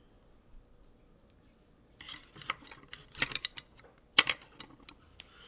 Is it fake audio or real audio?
real